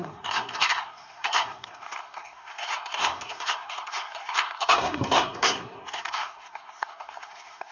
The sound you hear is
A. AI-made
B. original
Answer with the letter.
A